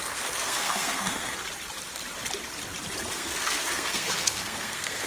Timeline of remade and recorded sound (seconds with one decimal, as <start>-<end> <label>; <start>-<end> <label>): 0.0-1.4 remade; 1.4-3.1 recorded; 3.1-5.1 remade